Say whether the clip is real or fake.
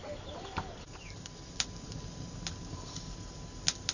real